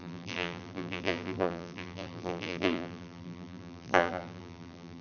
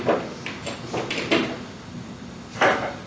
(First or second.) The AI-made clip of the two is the first